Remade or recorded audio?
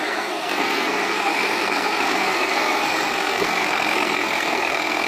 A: remade